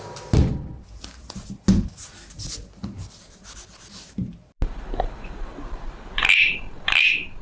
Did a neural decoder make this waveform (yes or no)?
no